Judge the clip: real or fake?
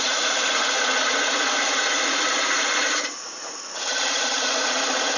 fake